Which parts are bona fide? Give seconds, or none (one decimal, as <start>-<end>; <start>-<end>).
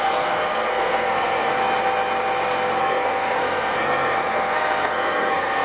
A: 1.5-2.8